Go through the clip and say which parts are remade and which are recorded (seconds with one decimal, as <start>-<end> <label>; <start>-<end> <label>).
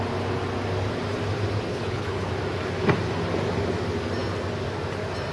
0.0-1.7 recorded; 1.7-2.3 remade; 2.3-5.3 recorded